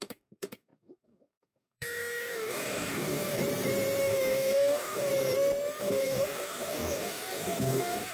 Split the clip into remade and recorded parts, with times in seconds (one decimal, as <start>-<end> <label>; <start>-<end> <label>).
0.0-3.4 remade; 3.4-4.0 recorded; 4.0-5.1 remade; 5.1-5.8 recorded; 5.8-8.1 remade